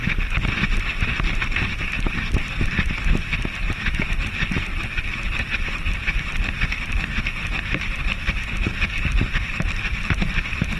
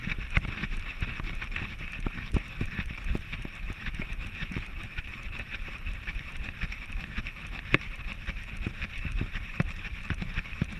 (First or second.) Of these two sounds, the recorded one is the first